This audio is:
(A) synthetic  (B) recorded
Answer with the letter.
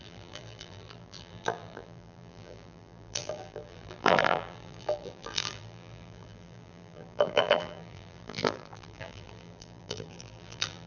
A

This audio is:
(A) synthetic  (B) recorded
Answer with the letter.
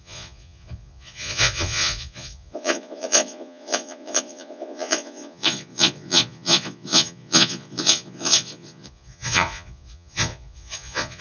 A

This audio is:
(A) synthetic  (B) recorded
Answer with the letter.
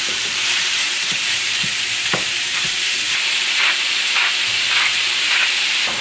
A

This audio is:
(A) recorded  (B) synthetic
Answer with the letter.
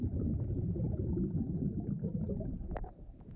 A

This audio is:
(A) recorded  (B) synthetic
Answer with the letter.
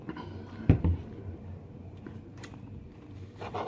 B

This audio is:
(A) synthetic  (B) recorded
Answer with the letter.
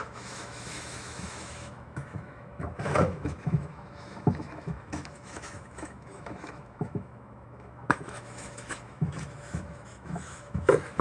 A